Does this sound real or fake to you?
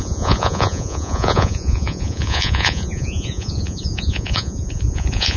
fake